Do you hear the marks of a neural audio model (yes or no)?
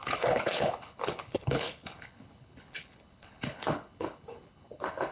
yes